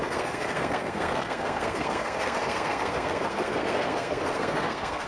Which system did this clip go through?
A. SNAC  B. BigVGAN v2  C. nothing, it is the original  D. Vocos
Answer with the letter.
A